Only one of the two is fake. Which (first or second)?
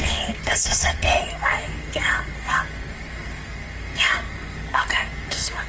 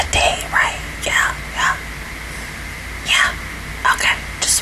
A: first